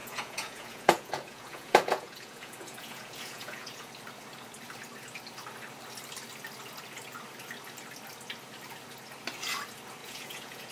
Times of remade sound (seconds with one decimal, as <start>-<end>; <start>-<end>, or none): 0.0-3.9; 10.0-10.7